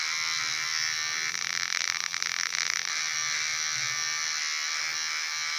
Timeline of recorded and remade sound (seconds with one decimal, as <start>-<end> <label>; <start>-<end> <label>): 0.0-1.3 recorded; 1.3-2.9 remade; 2.9-5.6 recorded